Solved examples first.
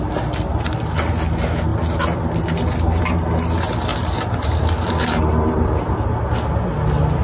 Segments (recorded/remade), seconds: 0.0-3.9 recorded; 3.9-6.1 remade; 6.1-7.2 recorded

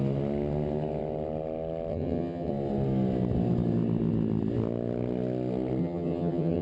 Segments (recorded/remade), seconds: 0.0-1.9 recorded; 1.9-2.5 remade; 2.5-5.8 recorded; 5.8-6.6 remade

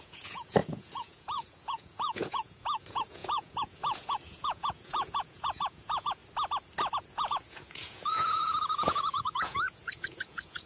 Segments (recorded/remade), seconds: 0.0-6.2 remade; 6.2-7.1 recorded; 7.1-10.7 remade